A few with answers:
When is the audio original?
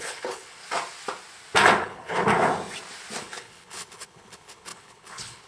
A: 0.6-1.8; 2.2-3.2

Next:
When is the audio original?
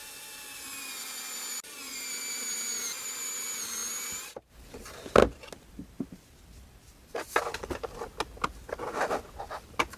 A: 0.0-10.0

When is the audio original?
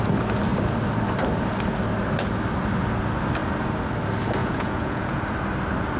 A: 0.0-4.4; 5.2-6.0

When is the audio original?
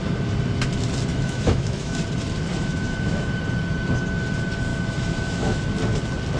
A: 0.0-1.1; 2.0-2.5; 3.3-4.7; 5.6-6.4